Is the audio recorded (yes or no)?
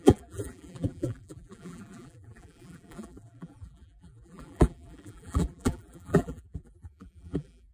no